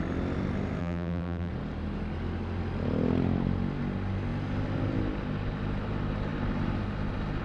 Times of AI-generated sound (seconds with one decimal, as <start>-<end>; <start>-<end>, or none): 0.8-1.5

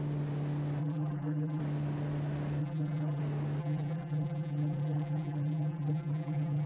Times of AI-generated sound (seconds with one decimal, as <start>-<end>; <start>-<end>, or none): 0.8-1.6; 2.6-3.2; 3.6-6.7

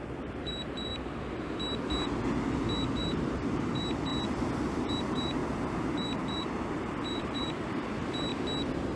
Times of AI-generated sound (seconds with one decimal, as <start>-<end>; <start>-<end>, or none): 0.0-0.9; 2.9-4.1; 5.0-8.3

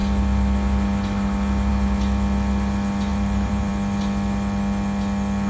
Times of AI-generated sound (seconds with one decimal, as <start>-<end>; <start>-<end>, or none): 3.1-3.7